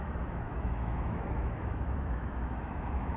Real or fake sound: fake